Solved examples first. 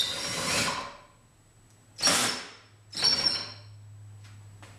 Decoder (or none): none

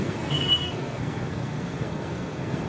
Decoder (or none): codec, SNAC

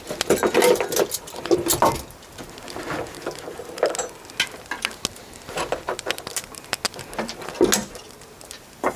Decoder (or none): none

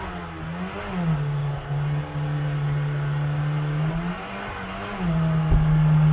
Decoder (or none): none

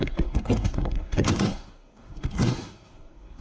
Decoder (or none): codec, SNAC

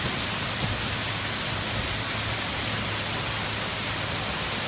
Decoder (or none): none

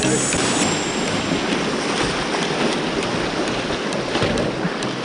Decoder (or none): none